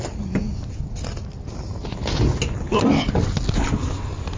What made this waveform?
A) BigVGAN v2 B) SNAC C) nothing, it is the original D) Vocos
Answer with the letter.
C